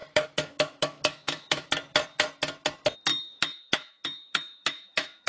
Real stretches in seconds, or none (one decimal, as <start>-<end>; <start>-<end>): 1.7-3.1